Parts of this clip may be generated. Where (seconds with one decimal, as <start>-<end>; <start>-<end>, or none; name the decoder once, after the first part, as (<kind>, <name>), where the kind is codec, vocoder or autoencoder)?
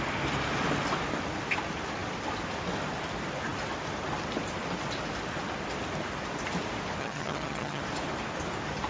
7.0-7.8 (vocoder, HiFi-GAN)